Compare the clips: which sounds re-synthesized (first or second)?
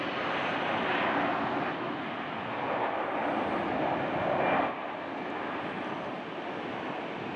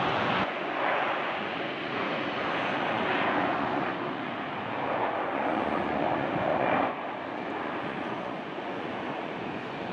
second